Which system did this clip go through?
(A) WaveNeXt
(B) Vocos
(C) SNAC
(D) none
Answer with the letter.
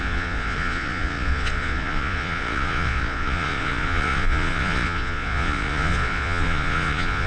B